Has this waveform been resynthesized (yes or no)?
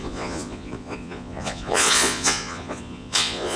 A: yes